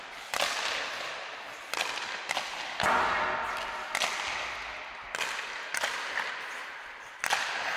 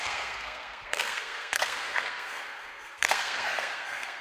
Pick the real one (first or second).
first